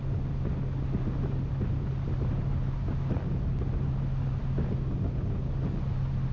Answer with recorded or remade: recorded